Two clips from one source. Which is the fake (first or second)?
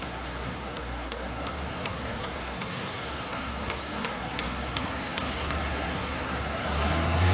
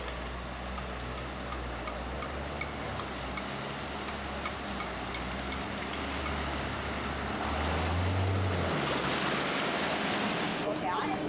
first